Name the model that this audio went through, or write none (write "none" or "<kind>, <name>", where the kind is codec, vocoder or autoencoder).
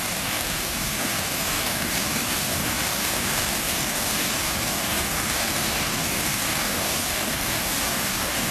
codec, DAC